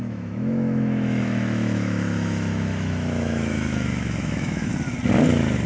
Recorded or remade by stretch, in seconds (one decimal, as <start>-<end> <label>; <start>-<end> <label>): 0.0-4.7 remade; 4.7-5.7 recorded